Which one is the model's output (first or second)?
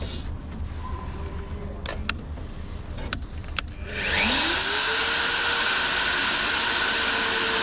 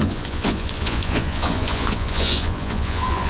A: second